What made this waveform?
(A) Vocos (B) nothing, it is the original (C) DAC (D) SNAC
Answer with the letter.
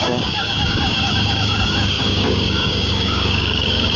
C